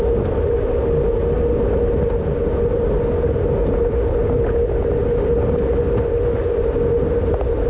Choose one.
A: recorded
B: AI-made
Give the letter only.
A